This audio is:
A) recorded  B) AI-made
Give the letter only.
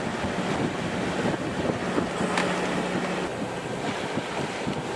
A